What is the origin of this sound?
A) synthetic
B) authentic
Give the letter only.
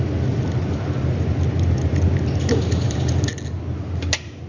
B